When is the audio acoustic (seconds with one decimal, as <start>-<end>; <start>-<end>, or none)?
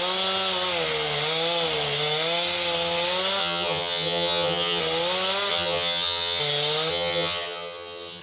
0.0-3.4; 4.8-5.5; 6.4-6.9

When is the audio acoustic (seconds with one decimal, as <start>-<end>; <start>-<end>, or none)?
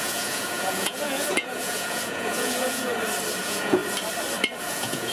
2.9-3.4; 3.8-4.6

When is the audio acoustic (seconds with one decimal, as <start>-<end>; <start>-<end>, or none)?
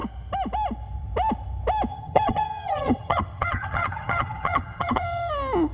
0.0-1.9; 5.3-5.7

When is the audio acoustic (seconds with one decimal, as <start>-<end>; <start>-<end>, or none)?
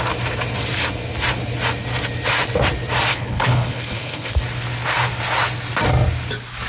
0.0-3.1; 4.3-6.7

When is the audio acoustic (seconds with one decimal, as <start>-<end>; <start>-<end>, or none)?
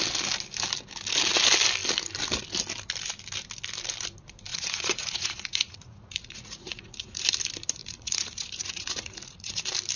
0.0-4.5; 7.2-7.8; 9.6-10.0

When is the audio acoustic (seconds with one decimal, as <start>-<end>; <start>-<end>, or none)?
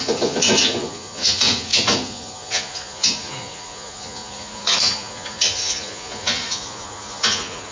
none